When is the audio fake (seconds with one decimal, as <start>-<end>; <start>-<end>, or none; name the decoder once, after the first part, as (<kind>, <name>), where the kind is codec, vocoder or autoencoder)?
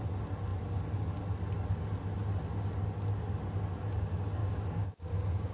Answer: 4.4-5.5 (codec, DAC)